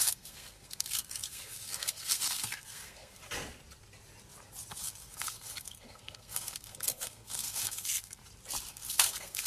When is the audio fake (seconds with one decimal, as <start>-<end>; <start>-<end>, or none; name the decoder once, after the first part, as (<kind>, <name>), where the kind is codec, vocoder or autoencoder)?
0.0-3.2 (codec, SNAC); 4.7-8.2; 8.7-9.5